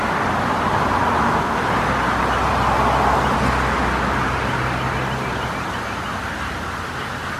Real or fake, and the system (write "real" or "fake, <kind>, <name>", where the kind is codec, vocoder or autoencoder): real